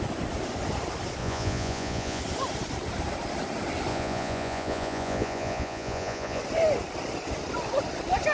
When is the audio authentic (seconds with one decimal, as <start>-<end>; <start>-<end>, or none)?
0.0-1.2; 2.2-3.9; 6.4-8.3